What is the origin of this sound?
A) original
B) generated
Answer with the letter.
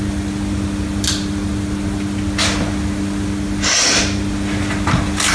A